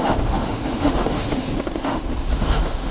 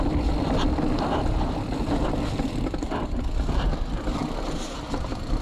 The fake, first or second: first